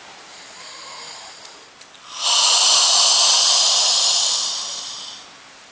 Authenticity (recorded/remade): recorded